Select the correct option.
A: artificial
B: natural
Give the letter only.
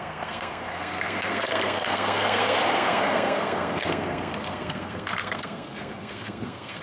A